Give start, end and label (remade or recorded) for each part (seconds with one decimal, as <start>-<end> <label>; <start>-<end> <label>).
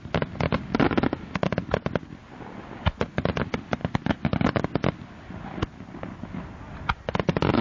0.0-7.6 recorded